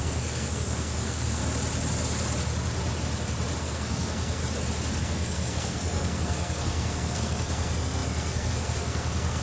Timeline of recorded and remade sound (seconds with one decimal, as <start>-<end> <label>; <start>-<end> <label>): 0.0-1.4 remade; 1.4-3.6 recorded; 3.6-4.4 remade; 4.4-5.0 recorded; 5.0-9.4 remade